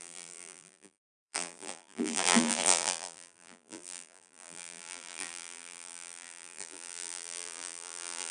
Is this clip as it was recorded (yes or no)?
no